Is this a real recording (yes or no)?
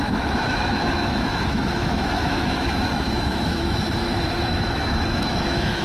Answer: no